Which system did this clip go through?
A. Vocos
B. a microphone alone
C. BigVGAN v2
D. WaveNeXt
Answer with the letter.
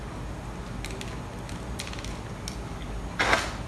B